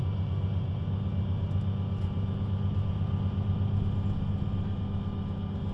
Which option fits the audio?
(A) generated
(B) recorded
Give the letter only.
B